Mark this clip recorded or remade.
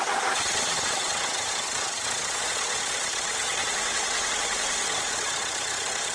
remade